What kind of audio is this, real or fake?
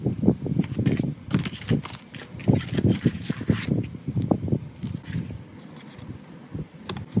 real